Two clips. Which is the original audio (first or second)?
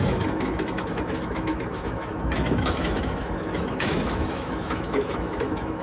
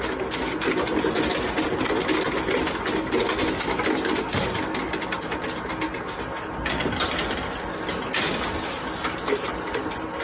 second